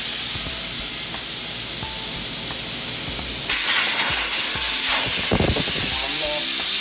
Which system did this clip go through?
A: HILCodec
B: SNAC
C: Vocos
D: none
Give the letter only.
D